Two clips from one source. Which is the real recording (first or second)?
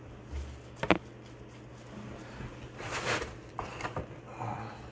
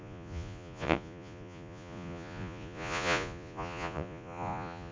first